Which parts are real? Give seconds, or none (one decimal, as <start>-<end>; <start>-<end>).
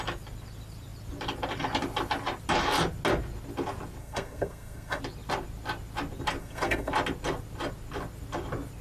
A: 0.0-4.0; 5.0-6.4; 6.9-8.8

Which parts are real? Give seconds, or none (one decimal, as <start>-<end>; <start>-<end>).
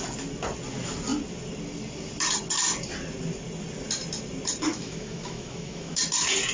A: 0.0-4.7; 6.0-6.5